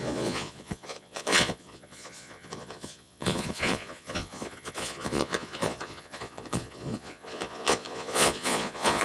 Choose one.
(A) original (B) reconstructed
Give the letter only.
B